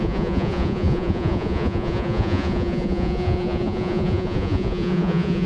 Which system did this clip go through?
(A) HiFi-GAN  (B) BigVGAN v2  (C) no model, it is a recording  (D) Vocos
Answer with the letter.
D